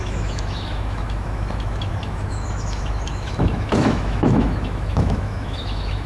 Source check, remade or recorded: remade